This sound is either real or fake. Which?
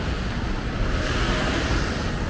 real